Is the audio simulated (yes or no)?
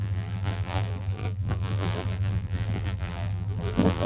yes